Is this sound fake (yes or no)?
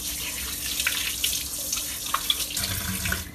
no